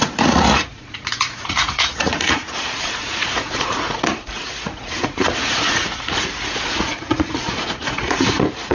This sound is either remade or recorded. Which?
remade